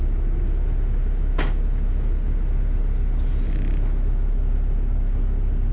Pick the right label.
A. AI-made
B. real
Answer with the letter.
B